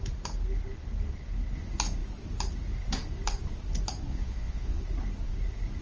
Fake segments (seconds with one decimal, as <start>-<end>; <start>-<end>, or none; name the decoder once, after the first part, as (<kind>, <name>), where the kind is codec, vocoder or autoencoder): 4.1-4.8 (vocoder, Vocos)

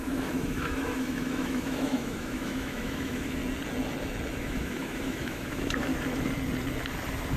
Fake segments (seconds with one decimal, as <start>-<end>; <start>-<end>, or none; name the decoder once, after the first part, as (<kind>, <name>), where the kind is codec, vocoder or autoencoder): 0.0-3.4 (autoencoder, DAC-VAE); 4.3-5.9

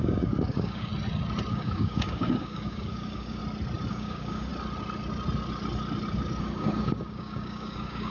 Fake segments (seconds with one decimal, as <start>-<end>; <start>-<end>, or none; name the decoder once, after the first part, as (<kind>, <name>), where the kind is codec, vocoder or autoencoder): 0.0-0.9 (codec, DAC); 1.5-3.4; 3.9-4.5; 6.4-8.1

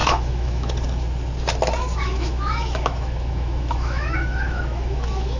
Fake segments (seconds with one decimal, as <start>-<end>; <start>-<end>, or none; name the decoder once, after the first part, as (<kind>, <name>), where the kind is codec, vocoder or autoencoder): 0.0-0.7 (autoencoder, DAC-VAE); 1.9-5.4

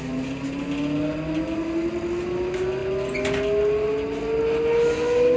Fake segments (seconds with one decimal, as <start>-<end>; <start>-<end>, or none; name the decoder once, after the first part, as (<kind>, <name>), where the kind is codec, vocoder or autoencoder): none

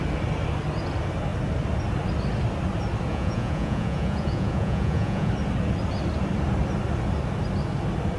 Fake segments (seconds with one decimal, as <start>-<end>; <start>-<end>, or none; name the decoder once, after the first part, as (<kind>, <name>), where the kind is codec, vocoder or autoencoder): 3.1-5.3 (vocoder, Vocos)

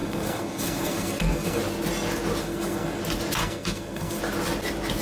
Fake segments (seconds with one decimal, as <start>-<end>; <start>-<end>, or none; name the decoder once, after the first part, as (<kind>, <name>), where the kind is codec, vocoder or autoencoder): 0.0-1.6 (codec, SNAC); 2.4-3.0; 3.4-4.2

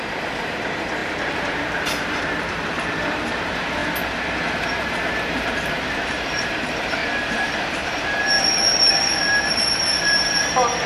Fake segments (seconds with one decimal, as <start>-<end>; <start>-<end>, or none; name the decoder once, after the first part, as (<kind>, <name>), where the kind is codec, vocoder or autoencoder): 0.0-3.8 (vocoder, BigVGAN v2); 4.6-7.0; 7.6-10.9